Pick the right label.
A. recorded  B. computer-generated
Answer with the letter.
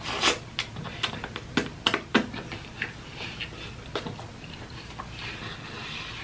A